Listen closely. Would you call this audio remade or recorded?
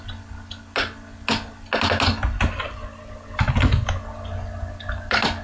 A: recorded